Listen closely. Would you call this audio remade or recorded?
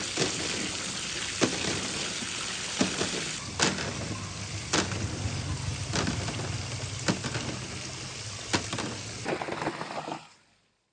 recorded